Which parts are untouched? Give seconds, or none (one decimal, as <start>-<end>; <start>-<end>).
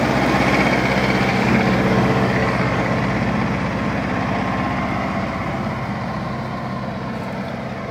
0.0-1.3; 3.0-7.9